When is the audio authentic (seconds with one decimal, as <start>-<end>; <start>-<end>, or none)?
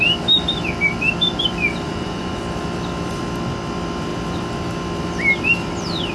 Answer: 0.0-1.9; 2.4-6.1